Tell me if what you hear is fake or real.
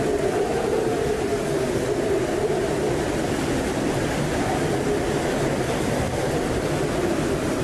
fake